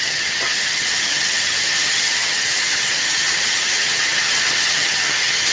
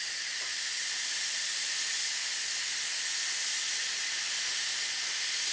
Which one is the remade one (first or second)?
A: first